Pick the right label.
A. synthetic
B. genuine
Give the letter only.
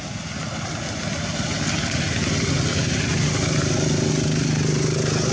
B